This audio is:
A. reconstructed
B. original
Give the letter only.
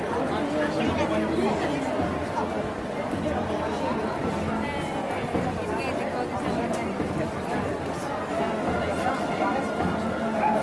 B